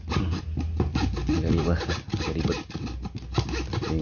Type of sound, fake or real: real